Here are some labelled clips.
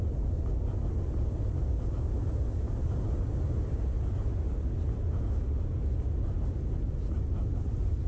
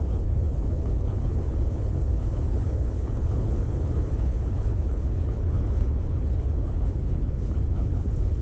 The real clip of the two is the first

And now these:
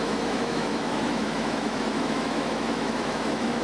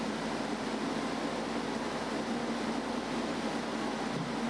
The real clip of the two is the second